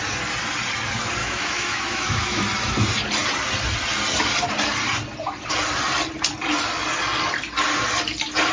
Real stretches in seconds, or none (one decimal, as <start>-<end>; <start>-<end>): 0.0-1.2; 2.4-8.5